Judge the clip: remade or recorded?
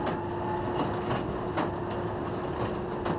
recorded